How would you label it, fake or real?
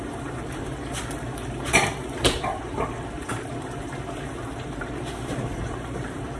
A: fake